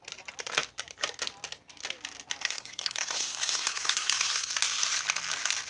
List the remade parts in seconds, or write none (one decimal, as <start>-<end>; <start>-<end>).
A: 2.4-4.5